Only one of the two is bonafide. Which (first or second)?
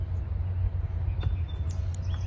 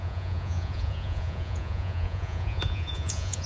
first